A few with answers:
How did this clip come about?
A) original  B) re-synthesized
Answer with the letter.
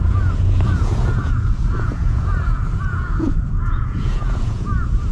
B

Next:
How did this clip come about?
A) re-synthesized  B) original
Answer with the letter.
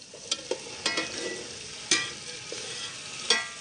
B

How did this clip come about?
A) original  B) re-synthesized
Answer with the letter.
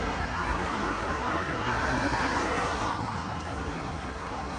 B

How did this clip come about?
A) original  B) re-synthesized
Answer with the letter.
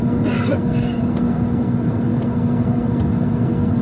B